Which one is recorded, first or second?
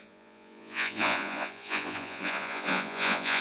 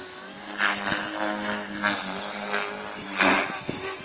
second